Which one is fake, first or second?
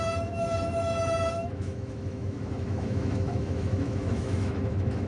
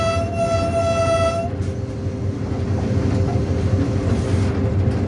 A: first